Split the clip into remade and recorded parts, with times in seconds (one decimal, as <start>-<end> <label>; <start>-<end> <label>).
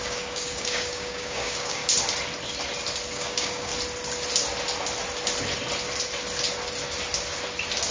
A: 0.0-1.8 remade; 1.8-3.1 recorded; 3.1-3.7 remade; 3.7-7.9 recorded